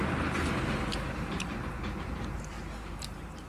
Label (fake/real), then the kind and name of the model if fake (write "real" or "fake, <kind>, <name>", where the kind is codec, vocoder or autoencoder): fake, vocoder, BigVGAN v2